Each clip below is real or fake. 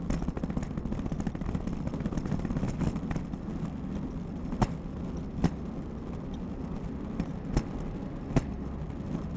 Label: real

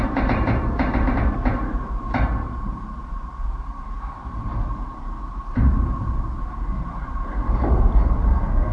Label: fake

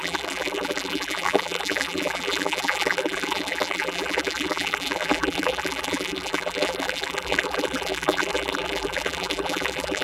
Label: fake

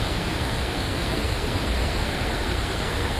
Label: fake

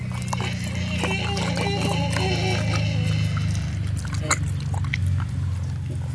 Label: real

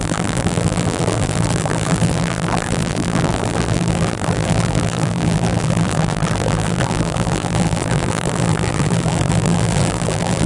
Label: fake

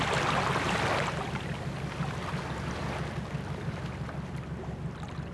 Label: real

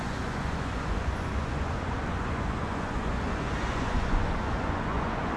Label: fake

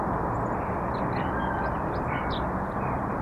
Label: real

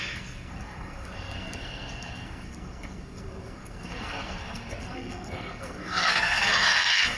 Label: fake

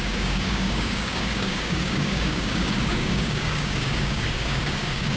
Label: fake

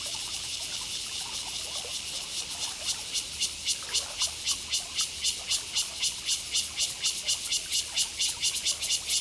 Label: real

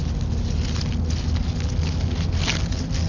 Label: real